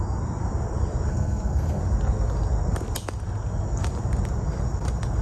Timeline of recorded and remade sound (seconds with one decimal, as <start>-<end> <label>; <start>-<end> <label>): 0.0-1.1 recorded; 1.1-1.8 remade; 1.8-5.2 recorded